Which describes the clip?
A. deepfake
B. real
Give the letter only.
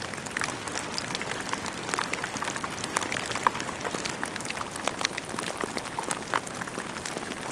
B